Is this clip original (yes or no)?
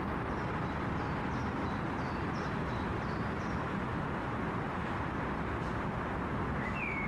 yes